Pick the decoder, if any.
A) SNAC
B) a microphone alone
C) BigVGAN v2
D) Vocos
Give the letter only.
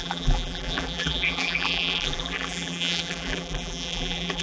C